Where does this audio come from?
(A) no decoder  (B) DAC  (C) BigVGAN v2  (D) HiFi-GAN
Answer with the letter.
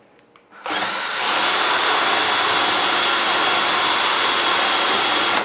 A